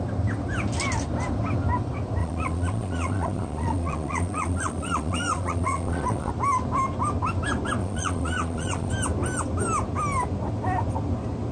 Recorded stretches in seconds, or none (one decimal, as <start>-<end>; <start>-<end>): 0.0-2.2; 6.3-7.8; 8.9-11.5